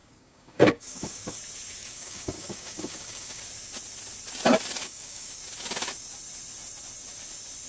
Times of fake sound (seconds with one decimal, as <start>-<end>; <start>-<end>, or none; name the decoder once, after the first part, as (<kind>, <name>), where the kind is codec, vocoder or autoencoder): 0.0-1.4 (codec, DAC); 1.8-3.4; 4.8-5.4